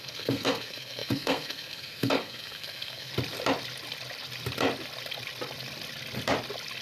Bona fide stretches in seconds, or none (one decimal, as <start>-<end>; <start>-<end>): 3.1-6.8